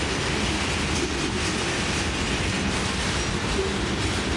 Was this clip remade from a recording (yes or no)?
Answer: no